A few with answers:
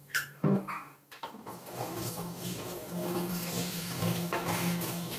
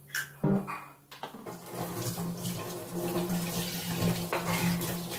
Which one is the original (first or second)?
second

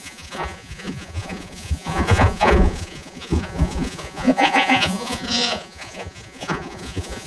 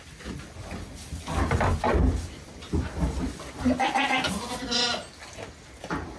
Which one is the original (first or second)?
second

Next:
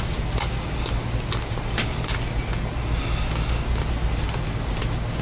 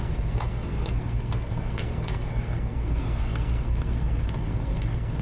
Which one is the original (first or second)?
first